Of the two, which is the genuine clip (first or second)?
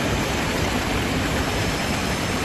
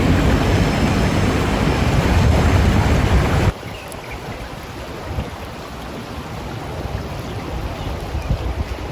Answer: second